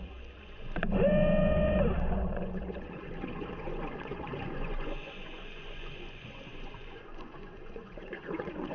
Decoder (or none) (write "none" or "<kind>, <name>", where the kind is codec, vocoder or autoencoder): vocoder, Vocos